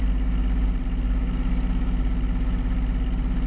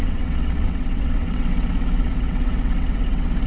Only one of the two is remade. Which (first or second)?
second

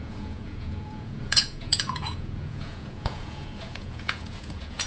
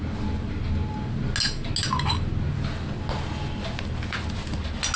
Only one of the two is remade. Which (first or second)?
first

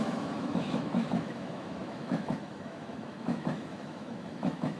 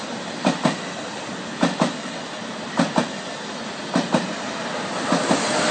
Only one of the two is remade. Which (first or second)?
first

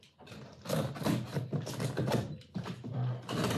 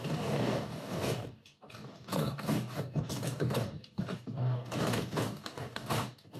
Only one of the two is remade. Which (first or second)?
second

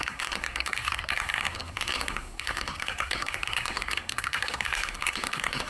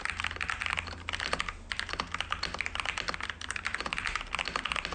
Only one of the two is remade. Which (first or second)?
first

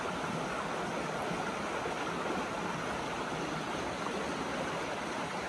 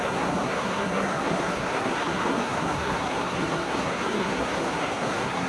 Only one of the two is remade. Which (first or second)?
second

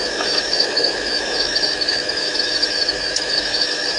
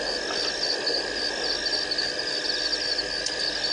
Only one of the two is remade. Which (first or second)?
first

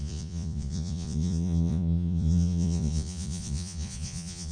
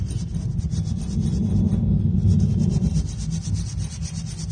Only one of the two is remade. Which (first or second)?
first